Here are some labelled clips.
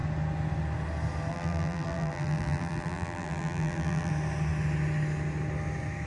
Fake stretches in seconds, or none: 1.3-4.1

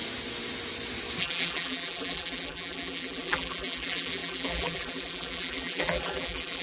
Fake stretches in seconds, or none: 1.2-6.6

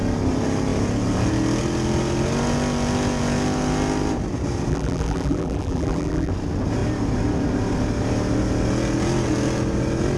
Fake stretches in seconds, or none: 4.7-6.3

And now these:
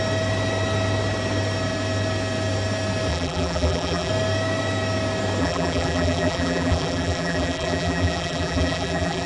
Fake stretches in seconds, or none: 3.1-4.1; 5.4-9.3

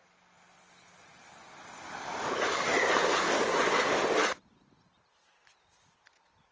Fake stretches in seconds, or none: 0.0-3.6

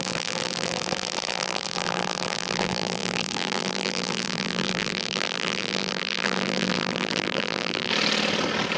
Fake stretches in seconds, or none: 0.0-7.9

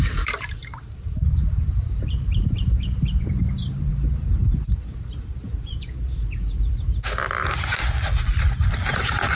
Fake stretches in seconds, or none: 0.0-7.8; 8.9-9.4

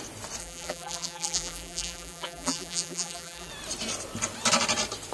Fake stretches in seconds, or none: 0.4-3.5